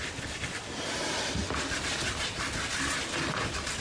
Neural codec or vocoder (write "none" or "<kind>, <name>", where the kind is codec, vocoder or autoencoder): none